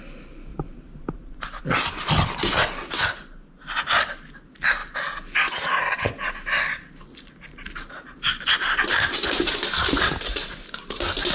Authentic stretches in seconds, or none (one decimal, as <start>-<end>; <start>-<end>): 0.0-0.5; 1.6-11.3